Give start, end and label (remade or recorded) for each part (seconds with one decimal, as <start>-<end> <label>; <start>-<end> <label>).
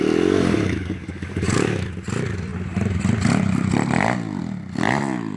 0.0-0.4 recorded; 0.4-1.9 remade; 1.9-5.4 recorded